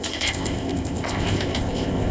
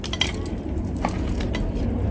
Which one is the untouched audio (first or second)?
second